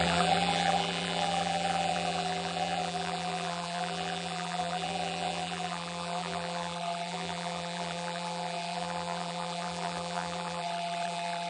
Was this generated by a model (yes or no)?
yes